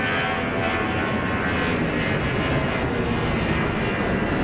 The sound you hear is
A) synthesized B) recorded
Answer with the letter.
B